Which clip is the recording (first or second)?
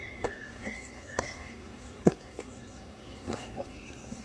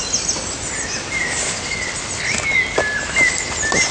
second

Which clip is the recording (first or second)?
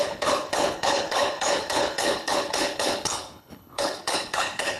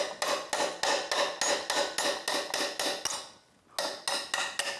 second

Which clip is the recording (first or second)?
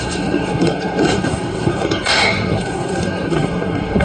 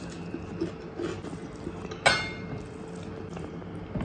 second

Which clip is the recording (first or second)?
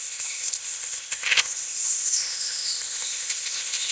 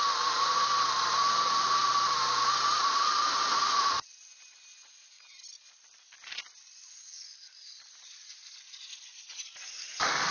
second